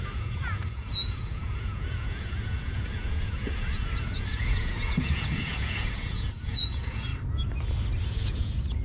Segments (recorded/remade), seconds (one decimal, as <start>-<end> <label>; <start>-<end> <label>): 0.0-7.1 remade; 7.1-8.1 recorded; 8.1-8.8 remade